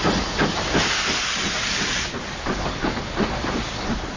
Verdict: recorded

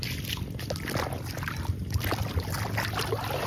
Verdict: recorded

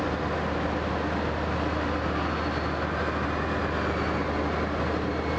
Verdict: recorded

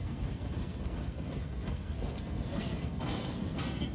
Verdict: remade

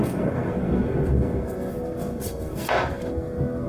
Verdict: remade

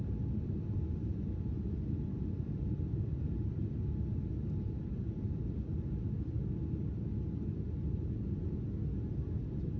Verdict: recorded